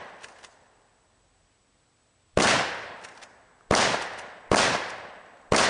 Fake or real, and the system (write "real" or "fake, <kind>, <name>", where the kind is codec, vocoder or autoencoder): real